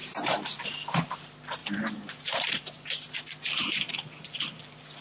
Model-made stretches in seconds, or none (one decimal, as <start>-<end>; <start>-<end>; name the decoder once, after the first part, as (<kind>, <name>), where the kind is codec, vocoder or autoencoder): 0.0-0.6 (vocoder, BigVGAN v2); 1.6-4.6

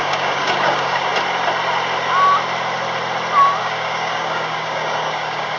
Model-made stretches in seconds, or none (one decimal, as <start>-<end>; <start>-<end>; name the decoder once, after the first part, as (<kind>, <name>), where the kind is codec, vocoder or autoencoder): 0.0-1.1 (codec, DAC); 3.6-5.6

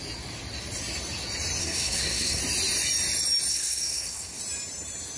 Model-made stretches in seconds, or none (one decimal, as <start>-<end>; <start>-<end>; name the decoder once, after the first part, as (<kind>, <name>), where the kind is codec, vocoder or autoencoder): 1.6-2.4 (codec, SNAC); 3.5-4.4